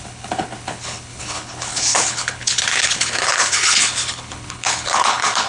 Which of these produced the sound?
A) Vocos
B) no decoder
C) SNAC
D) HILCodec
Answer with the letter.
D